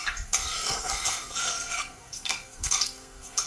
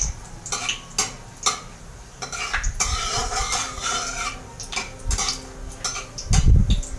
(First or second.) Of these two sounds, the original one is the second